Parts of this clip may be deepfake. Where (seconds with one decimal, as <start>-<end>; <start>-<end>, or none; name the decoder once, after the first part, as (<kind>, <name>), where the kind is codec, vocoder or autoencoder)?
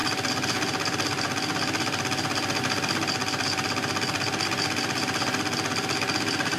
none